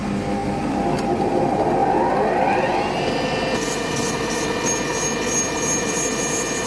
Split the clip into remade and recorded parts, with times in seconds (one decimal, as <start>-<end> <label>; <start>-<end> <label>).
0.0-6.7 recorded